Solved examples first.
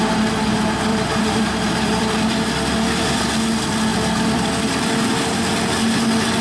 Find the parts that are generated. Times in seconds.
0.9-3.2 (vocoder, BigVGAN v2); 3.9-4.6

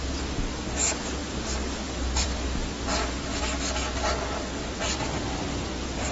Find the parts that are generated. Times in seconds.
1.2-3.4 (vocoder, BigVGAN v2)